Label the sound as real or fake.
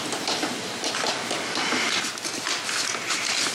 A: real